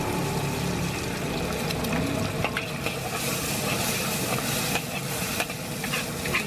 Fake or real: real